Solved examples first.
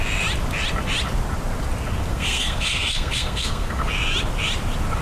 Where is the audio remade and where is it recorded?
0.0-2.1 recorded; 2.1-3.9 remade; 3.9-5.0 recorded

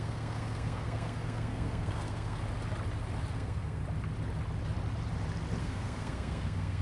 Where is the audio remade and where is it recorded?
0.0-2.4 remade; 2.4-3.3 recorded; 3.3-3.8 remade; 3.8-5.6 recorded; 5.6-6.8 remade

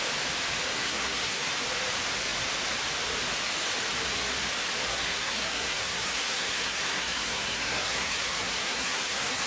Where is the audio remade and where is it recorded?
0.0-0.7 recorded; 0.7-1.5 remade; 1.5-4.9 recorded; 4.9-9.5 remade

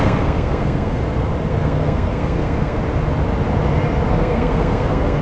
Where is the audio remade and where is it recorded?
0.0-1.0 remade; 1.0-1.5 recorded; 1.5-2.8 remade; 2.8-4.1 recorded; 4.1-5.2 remade

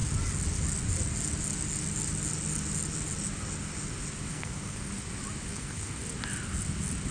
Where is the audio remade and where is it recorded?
0.0-4.3 recorded; 4.3-4.9 remade; 4.9-5.5 recorded; 5.5-6.0 remade; 6.0-7.1 recorded

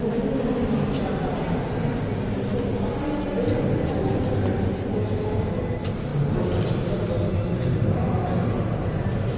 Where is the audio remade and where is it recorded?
0.0-9.4 recorded